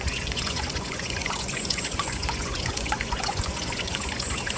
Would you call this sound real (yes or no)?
no